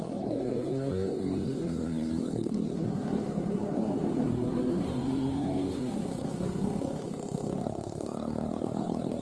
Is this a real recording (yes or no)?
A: no